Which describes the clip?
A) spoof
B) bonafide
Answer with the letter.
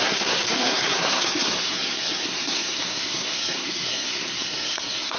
A